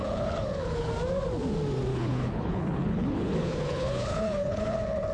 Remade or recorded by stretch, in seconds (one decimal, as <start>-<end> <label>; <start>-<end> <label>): 0.0-0.9 remade; 0.9-1.9 recorded; 1.9-5.1 remade